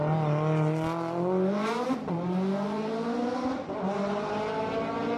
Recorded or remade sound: recorded